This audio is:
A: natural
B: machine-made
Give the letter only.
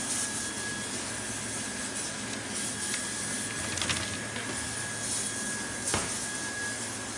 A